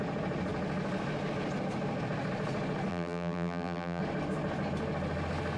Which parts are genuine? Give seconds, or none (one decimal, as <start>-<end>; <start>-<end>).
0.0-2.9; 4.0-5.6